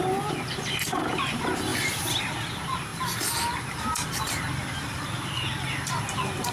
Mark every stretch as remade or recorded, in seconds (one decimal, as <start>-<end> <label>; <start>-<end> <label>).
0.0-6.5 recorded